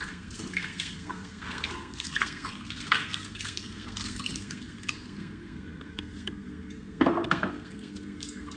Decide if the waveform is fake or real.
fake